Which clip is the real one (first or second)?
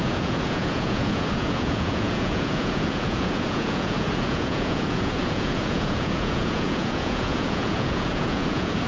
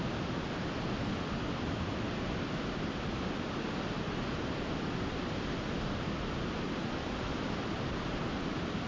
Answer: second